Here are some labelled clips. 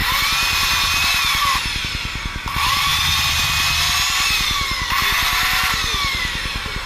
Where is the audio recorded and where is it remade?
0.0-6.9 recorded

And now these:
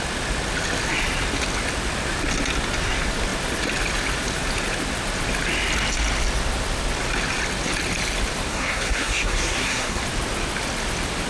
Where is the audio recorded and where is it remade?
0.0-8.5 recorded; 8.5-10.0 remade; 10.0-11.3 recorded